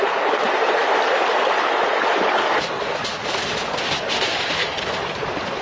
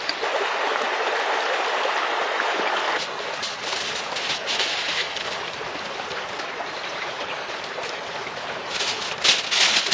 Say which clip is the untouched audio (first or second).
second